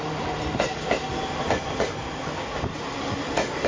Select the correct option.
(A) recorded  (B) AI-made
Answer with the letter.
A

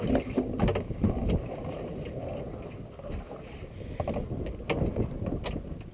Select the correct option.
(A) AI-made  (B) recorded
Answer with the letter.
B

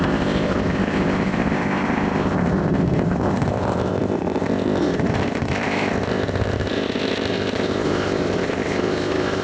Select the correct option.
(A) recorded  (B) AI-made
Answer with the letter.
B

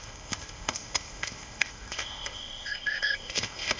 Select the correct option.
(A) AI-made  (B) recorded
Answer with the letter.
A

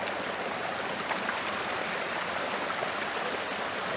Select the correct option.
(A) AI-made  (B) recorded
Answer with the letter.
B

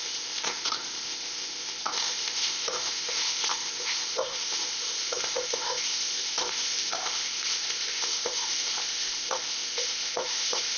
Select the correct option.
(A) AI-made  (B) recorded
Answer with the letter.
A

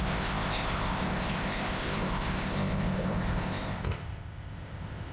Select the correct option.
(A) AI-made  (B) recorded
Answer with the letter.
A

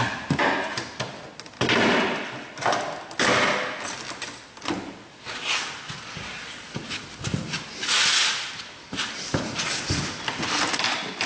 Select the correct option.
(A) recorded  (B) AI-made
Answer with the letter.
A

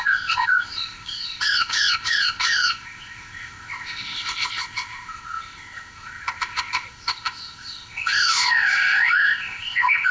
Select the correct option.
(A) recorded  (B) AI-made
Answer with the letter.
B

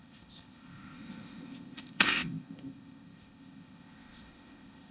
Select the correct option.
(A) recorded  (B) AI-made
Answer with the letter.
B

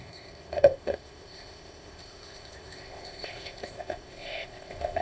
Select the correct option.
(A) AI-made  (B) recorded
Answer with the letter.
A